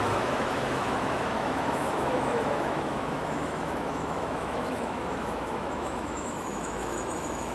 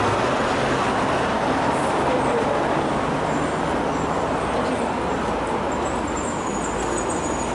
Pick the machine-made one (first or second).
first